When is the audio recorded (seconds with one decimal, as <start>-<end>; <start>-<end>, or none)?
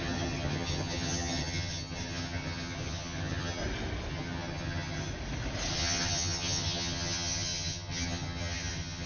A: 3.6-4.1; 5.1-5.7